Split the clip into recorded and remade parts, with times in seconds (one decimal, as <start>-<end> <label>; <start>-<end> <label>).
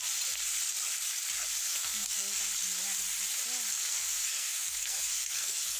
0.0-1.7 recorded; 1.7-2.4 remade; 2.4-3.7 recorded; 3.7-5.8 remade